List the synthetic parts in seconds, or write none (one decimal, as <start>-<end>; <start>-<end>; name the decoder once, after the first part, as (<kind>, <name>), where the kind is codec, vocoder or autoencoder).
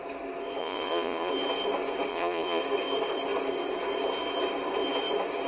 0.6-1.3 (vocoder, Vocos); 2.1-2.6